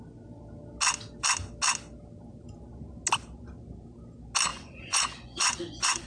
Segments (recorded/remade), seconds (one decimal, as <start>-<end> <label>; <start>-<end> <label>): 0.0-4.5 recorded; 4.5-6.1 remade